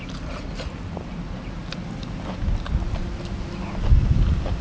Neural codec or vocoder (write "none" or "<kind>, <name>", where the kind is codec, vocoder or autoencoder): none